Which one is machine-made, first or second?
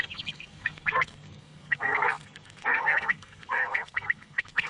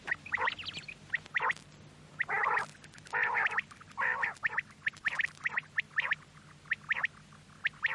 first